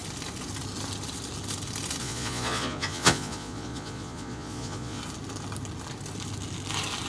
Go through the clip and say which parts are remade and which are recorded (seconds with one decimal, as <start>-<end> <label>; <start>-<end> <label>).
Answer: 0.0-2.0 recorded; 2.0-5.0 remade; 5.0-7.1 recorded